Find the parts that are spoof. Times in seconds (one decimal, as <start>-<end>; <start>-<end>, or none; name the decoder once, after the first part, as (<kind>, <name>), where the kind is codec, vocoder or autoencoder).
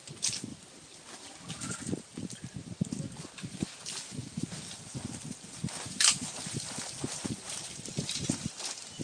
0.5-4.4 (vocoder, BigVGAN v2)